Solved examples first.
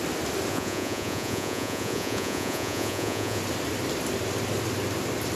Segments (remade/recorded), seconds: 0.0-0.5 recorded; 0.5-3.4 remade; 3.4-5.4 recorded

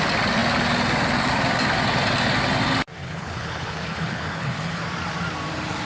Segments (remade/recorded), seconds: 0.0-3.0 recorded; 3.0-4.8 remade; 4.8-5.8 recorded

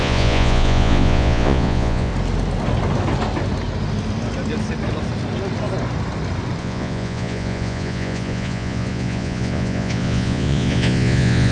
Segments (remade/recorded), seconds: 0.0-2.1 remade; 2.1-6.6 recorded; 6.6-11.5 remade